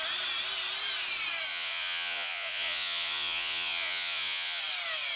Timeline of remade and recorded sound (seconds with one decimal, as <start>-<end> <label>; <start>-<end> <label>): 0.0-1.5 recorded; 1.5-4.6 remade; 4.6-5.2 recorded